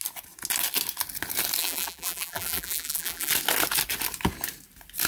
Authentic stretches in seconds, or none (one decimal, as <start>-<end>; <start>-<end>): 0.0-1.6; 3.3-5.1